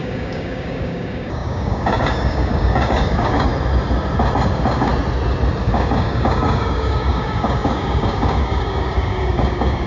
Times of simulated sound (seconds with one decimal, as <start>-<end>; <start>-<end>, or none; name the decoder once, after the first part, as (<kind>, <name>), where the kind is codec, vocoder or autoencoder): 0.0-3.5 (codec, DAC); 4.5-4.9; 5.6-9.9